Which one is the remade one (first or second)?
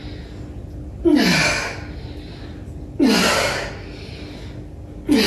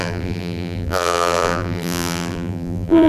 second